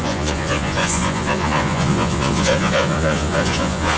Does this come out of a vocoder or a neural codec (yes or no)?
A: yes